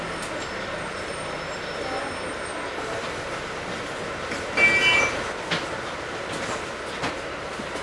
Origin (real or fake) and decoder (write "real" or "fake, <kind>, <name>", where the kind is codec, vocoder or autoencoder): real